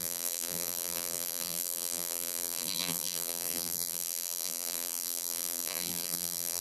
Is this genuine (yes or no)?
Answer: no